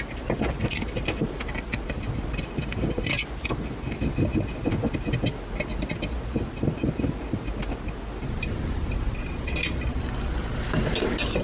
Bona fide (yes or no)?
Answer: yes